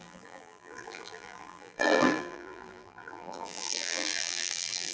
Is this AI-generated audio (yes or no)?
yes